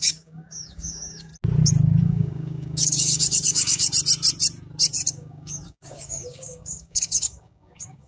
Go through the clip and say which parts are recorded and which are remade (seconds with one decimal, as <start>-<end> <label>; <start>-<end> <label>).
0.0-1.3 remade; 1.3-2.0 recorded; 2.0-3.9 remade; 3.9-5.1 recorded; 5.1-8.1 remade